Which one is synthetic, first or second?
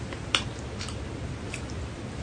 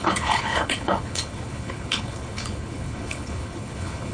second